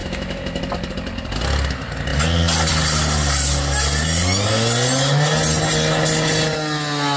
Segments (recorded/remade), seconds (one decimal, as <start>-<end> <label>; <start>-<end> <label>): 0.0-0.6 remade; 0.6-7.2 recorded